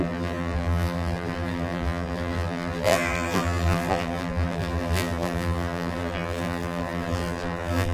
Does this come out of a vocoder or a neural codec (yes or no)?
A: yes